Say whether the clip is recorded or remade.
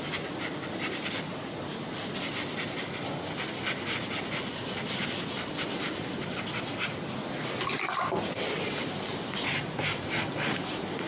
recorded